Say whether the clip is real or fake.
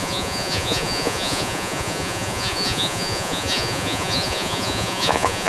fake